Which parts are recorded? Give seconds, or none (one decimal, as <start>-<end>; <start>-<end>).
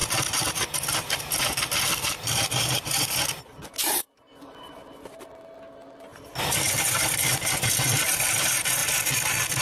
0.0-6.1; 8.2-8.8